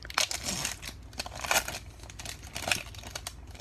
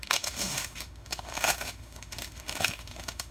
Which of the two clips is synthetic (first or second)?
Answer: second